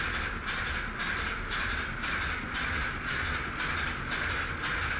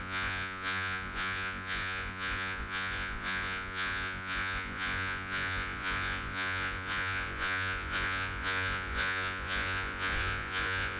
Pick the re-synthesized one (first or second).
second